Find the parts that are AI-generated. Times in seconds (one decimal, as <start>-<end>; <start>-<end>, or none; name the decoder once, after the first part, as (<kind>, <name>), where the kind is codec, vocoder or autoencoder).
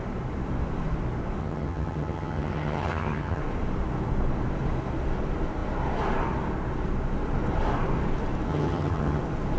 1.4-3.4 (vocoder, HiFi-GAN); 8.5-9.2